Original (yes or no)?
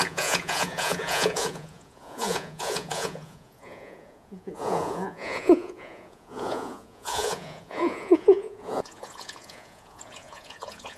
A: no